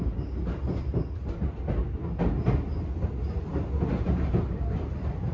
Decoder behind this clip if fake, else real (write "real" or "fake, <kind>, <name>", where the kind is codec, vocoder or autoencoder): real